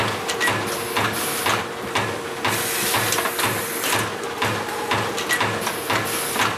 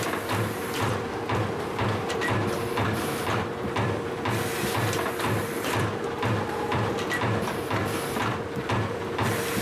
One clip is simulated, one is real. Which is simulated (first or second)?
second